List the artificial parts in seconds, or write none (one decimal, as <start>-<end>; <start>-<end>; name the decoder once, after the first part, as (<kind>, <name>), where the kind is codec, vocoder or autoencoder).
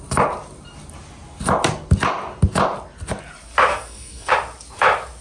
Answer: 3.7-4.3 (codec, SNAC)